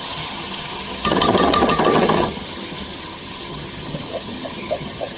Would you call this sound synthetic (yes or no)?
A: yes